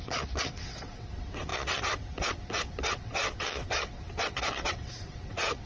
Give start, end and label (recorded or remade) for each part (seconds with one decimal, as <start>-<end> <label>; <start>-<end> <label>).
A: 0.0-5.7 remade